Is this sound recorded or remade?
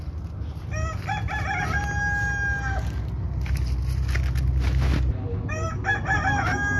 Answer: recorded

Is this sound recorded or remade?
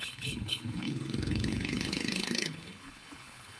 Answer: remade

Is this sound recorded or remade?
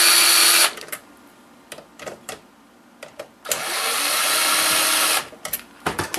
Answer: recorded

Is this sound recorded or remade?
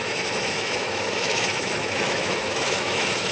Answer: remade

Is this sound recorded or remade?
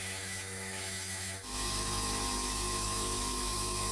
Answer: remade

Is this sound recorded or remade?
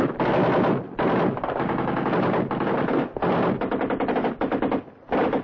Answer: recorded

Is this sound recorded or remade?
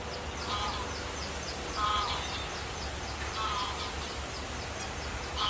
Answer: recorded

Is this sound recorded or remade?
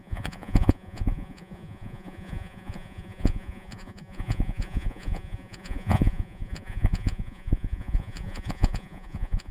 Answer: remade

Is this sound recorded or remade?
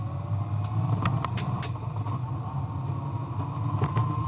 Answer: recorded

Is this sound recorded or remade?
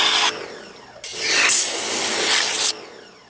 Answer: recorded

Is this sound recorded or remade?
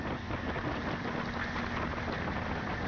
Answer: recorded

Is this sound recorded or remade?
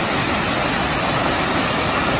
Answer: recorded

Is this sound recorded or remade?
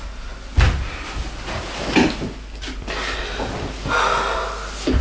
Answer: recorded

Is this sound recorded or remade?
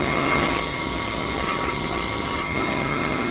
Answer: remade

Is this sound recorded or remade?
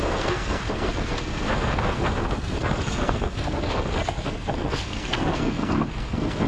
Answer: remade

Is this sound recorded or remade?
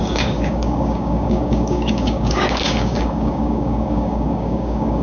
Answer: remade